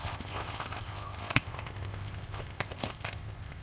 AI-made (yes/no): yes